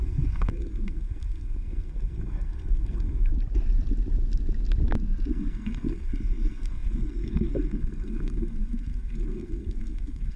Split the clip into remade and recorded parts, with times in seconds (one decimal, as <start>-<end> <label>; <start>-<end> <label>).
0.0-3.3 remade; 3.3-5.3 recorded; 5.3-10.4 remade